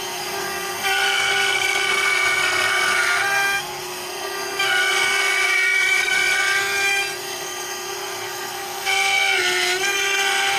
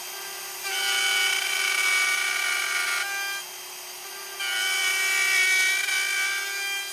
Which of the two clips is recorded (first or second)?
second